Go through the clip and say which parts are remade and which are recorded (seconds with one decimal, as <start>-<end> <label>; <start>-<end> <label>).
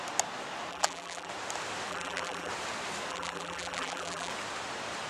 0.0-0.7 recorded; 0.7-1.3 remade; 1.3-1.9 recorded; 1.9-2.5 remade; 2.5-3.1 recorded; 3.1-4.3 remade; 4.3-5.1 recorded